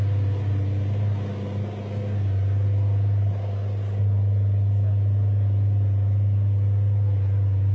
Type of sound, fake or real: real